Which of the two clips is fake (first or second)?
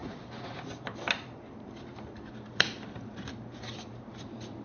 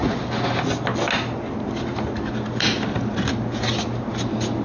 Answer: first